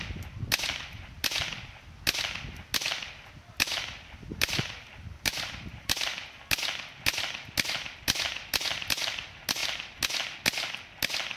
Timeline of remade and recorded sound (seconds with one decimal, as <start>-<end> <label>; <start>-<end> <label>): 0.0-4.3 recorded; 4.3-6.4 remade; 6.4-11.4 recorded